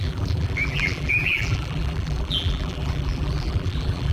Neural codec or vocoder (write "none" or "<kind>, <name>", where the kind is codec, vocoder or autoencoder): vocoder, BigVGAN v2